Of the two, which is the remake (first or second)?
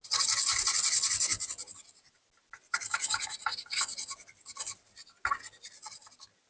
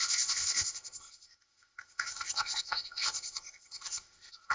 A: second